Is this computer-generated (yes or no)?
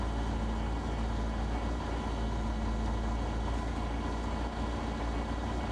no